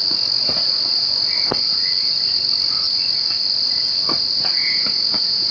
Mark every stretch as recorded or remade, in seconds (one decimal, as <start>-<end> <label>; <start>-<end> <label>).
0.0-4.6 recorded; 4.6-5.5 remade